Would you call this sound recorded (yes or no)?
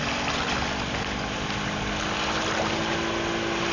yes